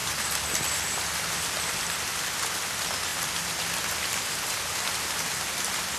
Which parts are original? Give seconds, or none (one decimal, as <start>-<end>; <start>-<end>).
0.0-6.0